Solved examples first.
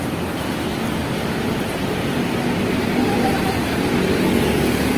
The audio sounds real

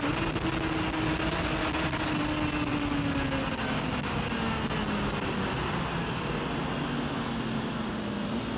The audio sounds real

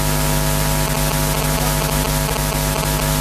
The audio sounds real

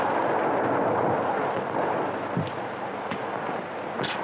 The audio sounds real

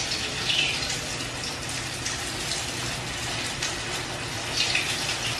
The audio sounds real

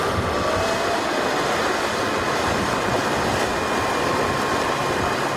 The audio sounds real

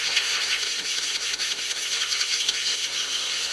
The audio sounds fake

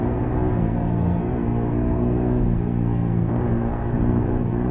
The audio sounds fake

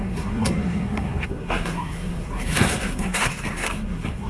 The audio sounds fake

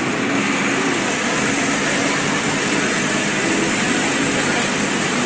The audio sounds real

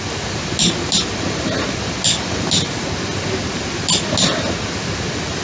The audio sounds real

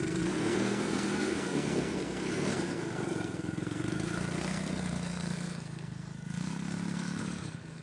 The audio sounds fake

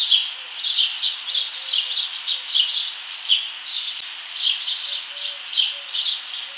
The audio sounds real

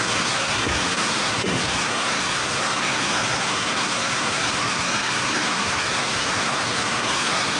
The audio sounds fake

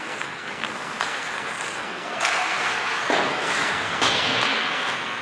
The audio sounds fake